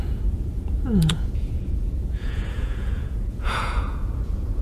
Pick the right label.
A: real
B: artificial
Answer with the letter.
B